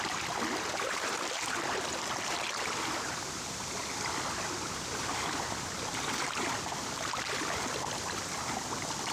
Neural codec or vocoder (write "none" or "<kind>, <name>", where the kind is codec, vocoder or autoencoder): none